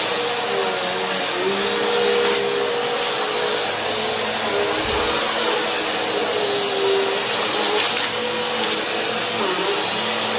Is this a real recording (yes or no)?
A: yes